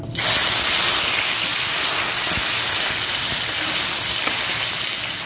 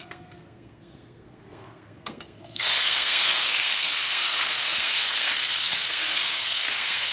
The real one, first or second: first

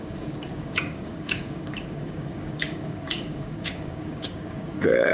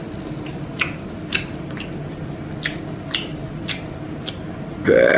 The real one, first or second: second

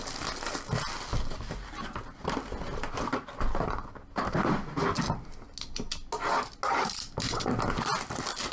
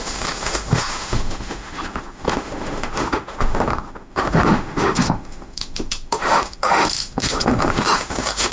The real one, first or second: first